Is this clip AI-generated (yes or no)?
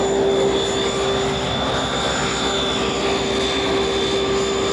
no